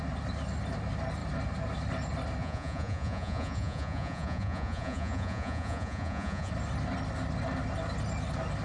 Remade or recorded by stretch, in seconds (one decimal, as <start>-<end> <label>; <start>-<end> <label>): 0.0-2.4 recorded; 2.4-6.5 remade; 6.5-8.6 recorded